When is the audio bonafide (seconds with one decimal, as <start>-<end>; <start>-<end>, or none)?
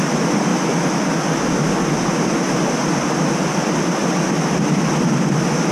0.0-5.7